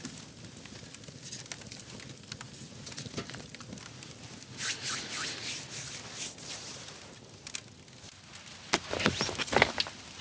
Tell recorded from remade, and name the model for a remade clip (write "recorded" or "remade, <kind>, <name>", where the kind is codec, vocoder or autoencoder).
recorded